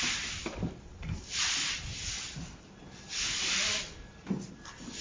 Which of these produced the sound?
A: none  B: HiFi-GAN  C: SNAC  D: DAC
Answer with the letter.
A